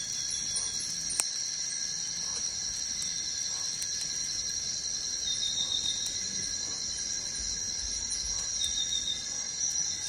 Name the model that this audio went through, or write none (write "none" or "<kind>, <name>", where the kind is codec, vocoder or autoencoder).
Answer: none